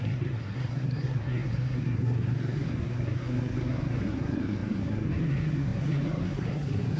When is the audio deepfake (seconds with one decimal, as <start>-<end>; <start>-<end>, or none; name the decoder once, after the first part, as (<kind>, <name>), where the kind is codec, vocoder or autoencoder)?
0.0-7.0 (codec, SNAC)